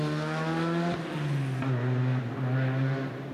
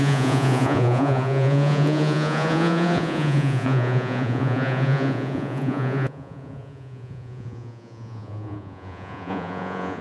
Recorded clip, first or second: first